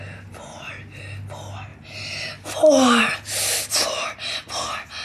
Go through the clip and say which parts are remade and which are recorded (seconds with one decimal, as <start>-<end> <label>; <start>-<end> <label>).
0.0-3.8 recorded; 3.8-4.5 remade; 4.5-5.0 recorded